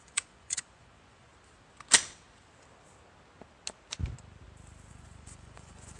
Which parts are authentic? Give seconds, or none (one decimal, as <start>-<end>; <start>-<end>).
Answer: 1.3-4.9